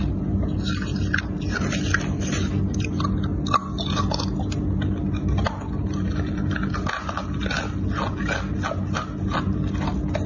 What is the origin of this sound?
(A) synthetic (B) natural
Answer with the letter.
B